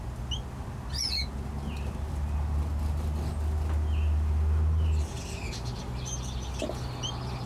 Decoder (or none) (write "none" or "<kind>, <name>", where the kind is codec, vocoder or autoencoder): none